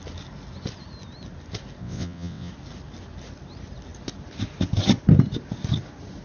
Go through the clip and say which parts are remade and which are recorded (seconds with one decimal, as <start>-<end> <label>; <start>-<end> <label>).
0.0-1.8 recorded; 1.8-2.5 remade; 2.5-6.2 recorded